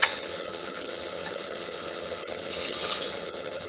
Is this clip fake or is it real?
fake